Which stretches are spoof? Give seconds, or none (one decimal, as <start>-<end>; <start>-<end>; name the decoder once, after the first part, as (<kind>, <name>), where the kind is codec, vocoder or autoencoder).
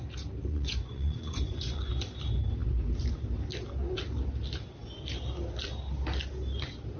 0.5-1.9 (vocoder, Vocos)